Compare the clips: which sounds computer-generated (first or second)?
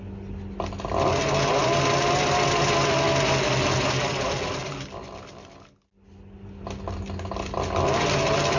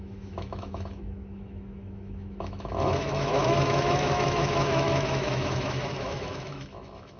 second